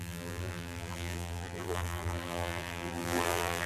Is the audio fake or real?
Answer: fake